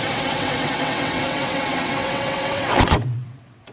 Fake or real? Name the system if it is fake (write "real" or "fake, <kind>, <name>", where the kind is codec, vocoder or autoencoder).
fake, vocoder, WaveNeXt